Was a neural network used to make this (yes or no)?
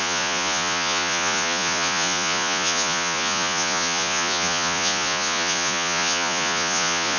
yes